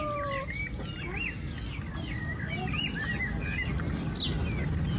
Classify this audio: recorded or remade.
recorded